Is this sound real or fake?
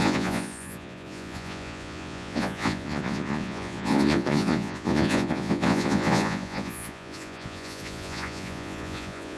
fake